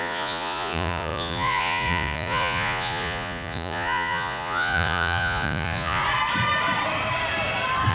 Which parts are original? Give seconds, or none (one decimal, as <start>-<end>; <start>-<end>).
6.0-7.9